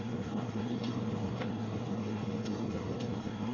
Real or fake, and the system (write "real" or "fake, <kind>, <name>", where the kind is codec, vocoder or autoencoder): fake, codec, SNAC